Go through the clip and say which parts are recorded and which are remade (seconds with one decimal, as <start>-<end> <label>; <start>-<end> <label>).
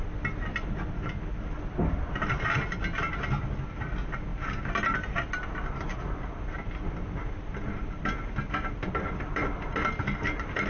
0.0-10.7 recorded